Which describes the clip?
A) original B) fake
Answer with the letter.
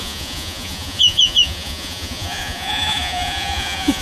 B